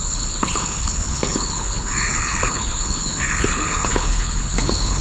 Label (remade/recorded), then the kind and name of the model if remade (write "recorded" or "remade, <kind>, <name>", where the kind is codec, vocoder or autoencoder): remade, codec, HILCodec